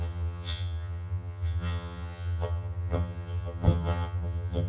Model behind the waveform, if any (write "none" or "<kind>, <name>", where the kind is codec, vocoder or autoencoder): vocoder, HiFi-GAN